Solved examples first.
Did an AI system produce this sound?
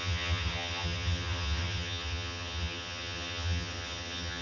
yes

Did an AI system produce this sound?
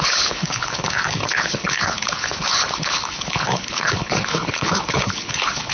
yes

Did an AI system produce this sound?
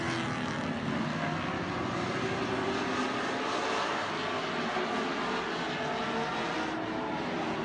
no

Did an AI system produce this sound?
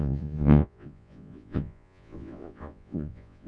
yes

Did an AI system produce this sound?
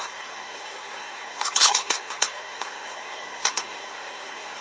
yes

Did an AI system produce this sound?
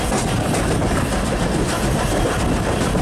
no